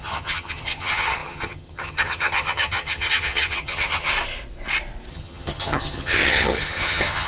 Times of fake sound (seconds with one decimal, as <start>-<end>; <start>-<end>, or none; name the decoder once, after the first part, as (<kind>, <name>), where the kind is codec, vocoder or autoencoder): 0.0-4.1 (vocoder, HiFi-GAN); 5.1-7.3